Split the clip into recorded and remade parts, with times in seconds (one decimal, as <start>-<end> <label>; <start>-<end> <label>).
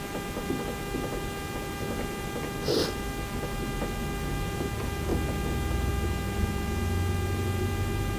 0.0-8.2 recorded